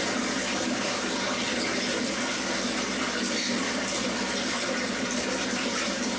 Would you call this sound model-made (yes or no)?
no